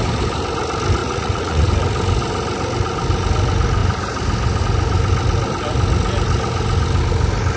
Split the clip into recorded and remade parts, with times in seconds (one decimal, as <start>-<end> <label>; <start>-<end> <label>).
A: 0.0-1.0 recorded; 1.0-1.7 remade; 1.7-7.6 recorded